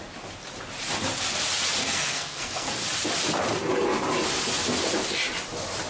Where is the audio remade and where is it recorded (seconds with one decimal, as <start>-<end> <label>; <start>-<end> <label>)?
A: 0.0-1.8 recorded; 1.8-2.7 remade; 2.7-5.9 recorded